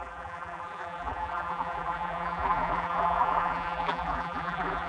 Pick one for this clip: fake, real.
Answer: fake